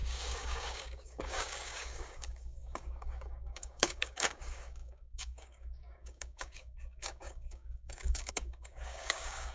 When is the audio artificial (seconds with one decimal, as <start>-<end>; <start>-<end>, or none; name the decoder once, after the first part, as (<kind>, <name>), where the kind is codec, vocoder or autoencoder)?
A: 0.0-9.5 (codec, DAC)